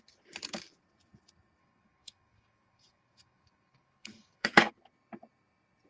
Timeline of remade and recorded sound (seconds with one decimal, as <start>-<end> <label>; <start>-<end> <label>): 0.0-1.6 recorded; 1.6-4.7 remade; 4.7-5.9 recorded